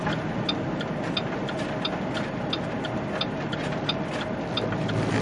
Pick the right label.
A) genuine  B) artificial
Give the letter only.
A